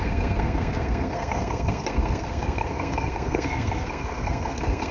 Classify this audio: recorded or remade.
remade